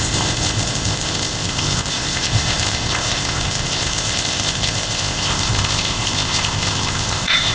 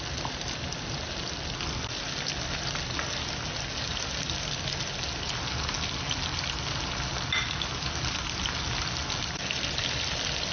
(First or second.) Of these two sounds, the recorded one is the second